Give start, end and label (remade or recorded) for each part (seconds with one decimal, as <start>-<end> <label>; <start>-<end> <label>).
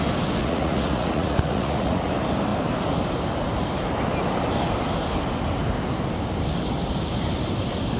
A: 0.0-0.4 recorded; 0.4-2.1 remade; 2.1-8.0 recorded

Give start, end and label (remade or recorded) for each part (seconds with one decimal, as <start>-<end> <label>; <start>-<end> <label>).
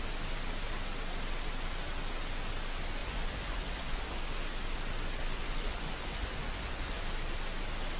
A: 0.0-3.0 recorded; 3.0-4.2 remade; 4.2-5.2 recorded; 5.2-7.0 remade; 7.0-8.0 recorded